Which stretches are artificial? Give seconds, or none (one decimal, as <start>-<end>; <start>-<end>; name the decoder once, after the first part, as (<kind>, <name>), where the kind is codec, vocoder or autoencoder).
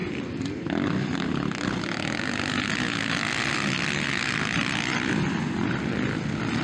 0.0-2.2 (vocoder, BigVGAN v2)